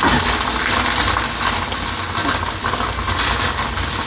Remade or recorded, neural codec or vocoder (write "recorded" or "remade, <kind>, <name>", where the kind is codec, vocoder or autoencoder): recorded